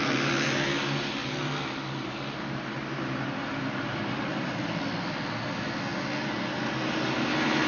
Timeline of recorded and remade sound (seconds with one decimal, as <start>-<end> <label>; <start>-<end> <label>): 0.0-7.7 recorded